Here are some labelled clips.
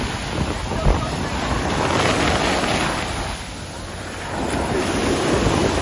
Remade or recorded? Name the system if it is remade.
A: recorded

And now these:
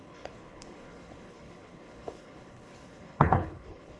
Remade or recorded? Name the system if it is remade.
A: remade, codec, HILCodec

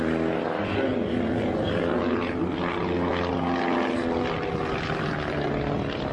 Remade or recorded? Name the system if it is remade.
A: recorded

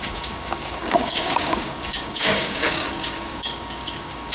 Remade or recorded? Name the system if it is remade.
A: remade, codec, DAC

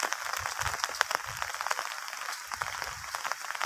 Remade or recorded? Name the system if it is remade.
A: recorded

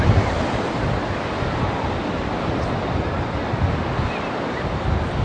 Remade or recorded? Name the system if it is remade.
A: recorded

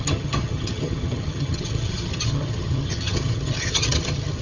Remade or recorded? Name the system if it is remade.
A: remade, vocoder, HiFi-GAN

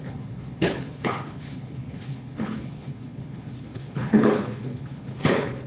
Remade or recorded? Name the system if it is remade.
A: remade, codec, HILCodec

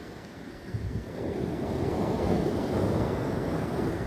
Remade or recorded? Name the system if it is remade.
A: remade, codec, SNAC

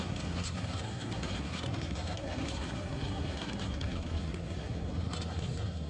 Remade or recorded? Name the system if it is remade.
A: remade, codec, SNAC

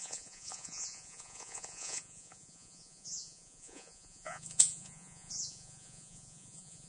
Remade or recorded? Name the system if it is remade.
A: remade, vocoder, Vocos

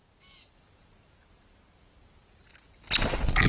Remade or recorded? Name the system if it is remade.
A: recorded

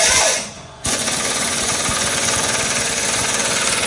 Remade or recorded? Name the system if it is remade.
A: remade, vocoder, Vocos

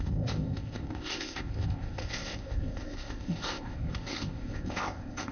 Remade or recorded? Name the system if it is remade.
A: remade, codec, ZipCodec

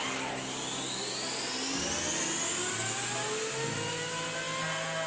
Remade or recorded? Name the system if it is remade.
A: recorded